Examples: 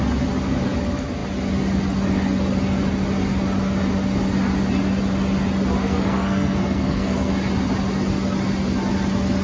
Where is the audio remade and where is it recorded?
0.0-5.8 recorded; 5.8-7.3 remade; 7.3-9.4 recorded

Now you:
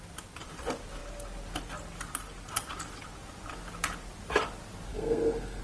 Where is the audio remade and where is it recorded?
0.0-4.9 recorded; 4.9-5.6 remade

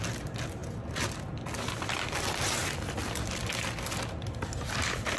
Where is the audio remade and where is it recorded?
0.0-5.2 recorded

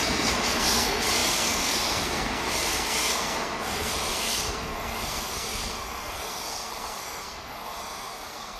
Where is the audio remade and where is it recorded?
0.0-8.6 remade